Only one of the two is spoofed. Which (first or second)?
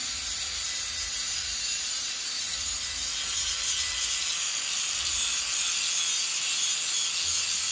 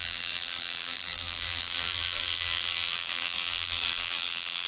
second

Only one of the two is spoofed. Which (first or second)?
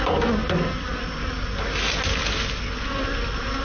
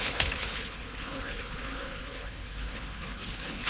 second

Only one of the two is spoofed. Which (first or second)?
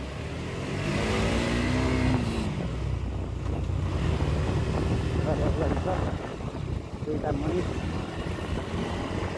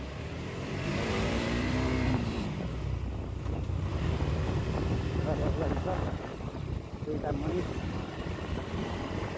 second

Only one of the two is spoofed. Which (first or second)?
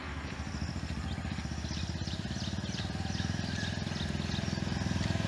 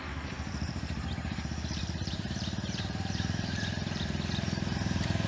second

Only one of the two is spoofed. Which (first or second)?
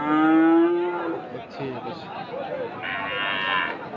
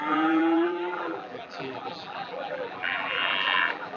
second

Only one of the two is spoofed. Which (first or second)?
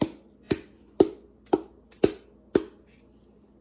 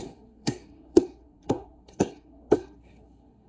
second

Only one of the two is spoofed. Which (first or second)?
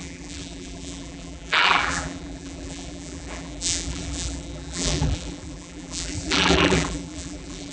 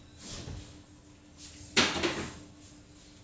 first